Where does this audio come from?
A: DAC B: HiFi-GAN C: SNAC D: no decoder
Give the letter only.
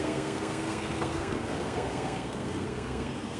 C